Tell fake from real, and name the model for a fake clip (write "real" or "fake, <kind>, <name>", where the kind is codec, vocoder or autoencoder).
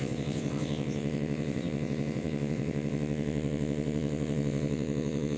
fake, vocoder, WaveNeXt